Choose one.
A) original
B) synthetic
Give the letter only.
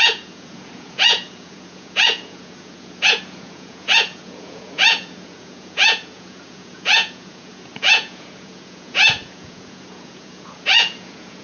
B